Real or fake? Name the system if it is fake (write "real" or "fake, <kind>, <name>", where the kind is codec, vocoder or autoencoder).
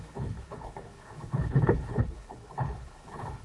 fake, codec, HILCodec